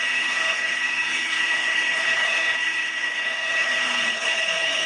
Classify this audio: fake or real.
fake